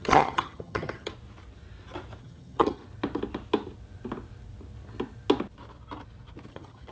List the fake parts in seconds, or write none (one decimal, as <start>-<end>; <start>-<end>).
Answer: 0.0-1.1; 2.2-2.8; 6.5-6.9